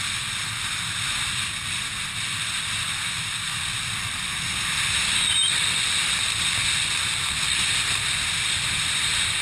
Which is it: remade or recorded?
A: recorded